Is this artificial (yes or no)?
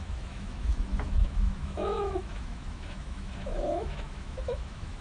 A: yes